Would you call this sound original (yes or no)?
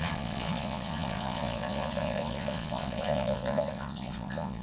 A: no